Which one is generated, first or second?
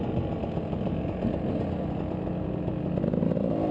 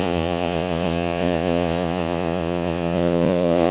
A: second